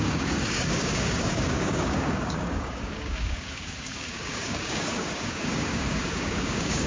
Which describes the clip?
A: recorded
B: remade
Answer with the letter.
B